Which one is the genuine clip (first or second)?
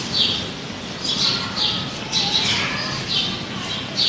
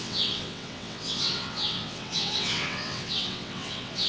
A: first